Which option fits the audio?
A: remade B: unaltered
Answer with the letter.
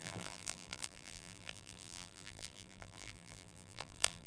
A